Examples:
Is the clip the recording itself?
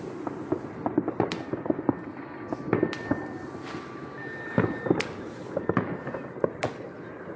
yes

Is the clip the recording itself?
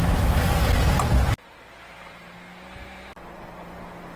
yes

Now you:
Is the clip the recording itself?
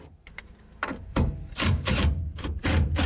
no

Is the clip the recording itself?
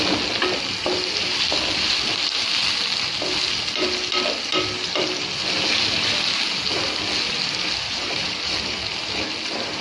yes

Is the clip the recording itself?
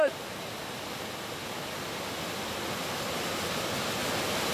yes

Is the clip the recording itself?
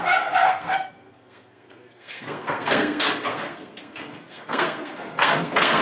no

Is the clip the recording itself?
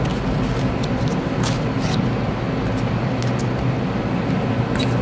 yes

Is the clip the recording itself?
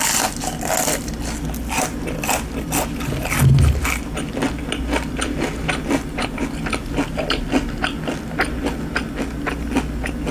yes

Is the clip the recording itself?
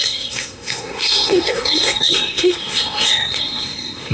no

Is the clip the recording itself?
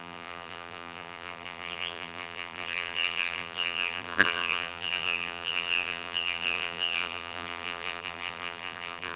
no